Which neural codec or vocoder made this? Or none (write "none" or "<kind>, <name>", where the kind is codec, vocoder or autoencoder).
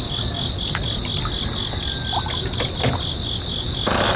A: none